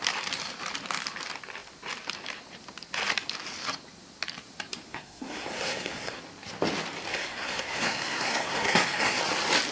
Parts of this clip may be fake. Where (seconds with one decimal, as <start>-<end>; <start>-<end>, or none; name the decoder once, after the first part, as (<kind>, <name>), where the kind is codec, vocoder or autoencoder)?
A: 4.9-6.2 (codec, SNAC); 7.1-9.2